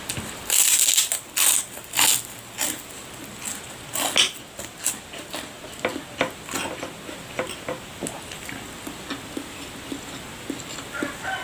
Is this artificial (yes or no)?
no